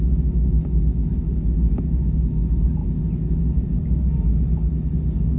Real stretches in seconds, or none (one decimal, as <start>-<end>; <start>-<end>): 0.0-5.4